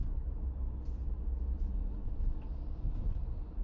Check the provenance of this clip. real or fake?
real